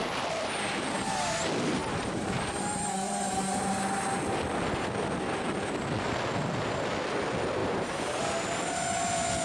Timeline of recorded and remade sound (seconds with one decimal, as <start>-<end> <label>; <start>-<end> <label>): 0.0-1.8 recorded; 1.8-3.7 remade; 3.7-7.6 recorded; 7.6-8.2 remade; 8.2-9.4 recorded